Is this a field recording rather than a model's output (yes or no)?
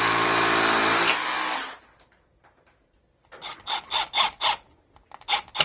yes